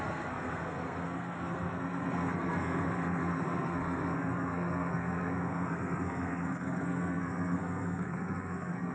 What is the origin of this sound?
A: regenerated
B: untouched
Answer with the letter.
A